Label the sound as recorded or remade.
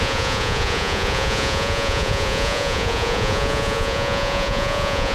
remade